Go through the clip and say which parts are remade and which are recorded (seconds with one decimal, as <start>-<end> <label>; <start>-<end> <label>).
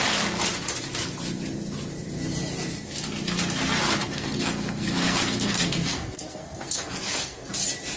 0.0-4.0 recorded; 4.0-7.5 remade; 7.5-8.0 recorded